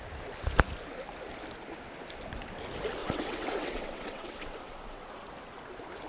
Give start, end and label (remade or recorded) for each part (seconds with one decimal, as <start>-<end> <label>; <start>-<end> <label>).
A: 0.0-3.0 recorded; 3.0-5.1 remade; 5.1-6.1 recorded